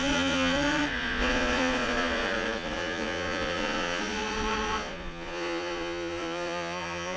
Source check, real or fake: fake